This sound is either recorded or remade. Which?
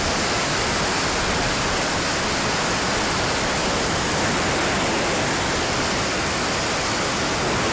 recorded